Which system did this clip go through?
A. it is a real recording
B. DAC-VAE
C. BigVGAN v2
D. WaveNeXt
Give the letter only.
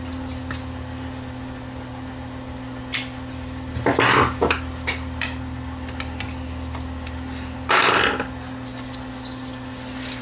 A